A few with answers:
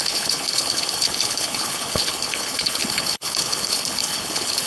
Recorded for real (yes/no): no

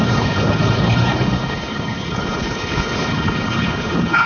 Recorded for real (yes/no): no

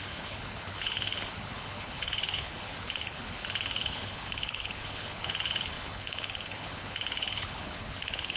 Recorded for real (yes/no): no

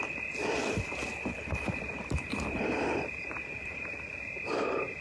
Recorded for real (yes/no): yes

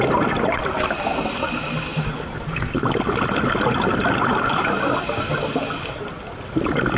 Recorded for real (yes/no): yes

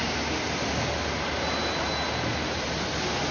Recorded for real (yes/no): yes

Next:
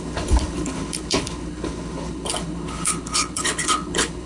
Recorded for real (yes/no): no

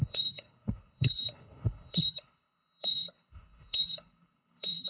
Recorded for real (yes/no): no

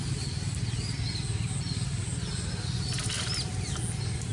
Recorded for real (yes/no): yes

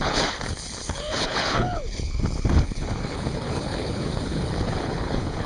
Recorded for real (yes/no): no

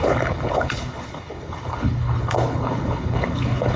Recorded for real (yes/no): no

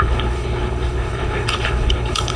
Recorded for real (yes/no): no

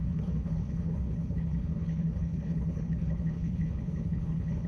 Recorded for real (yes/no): no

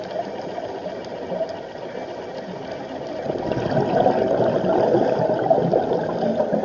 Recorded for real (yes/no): yes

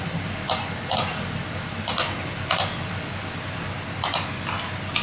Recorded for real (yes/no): yes